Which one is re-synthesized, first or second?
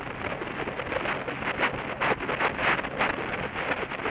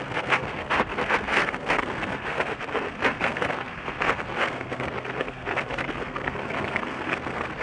second